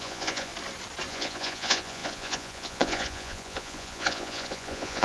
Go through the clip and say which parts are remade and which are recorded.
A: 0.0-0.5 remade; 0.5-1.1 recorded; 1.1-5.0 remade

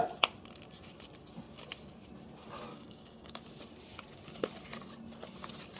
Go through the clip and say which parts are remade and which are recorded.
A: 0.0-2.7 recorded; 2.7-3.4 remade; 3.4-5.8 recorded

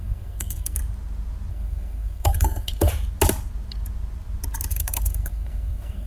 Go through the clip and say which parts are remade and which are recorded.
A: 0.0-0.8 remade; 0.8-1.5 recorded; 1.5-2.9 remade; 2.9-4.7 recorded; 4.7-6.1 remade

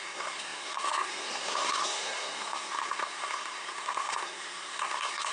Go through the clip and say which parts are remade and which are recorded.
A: 0.0-5.3 remade

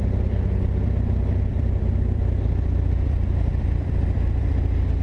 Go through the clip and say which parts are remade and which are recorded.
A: 0.0-1.5 recorded; 1.5-4.5 remade; 4.5-5.0 recorded